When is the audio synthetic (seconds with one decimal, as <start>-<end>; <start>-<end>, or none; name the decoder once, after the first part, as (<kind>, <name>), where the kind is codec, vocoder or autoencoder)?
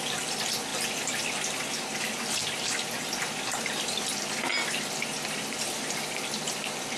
none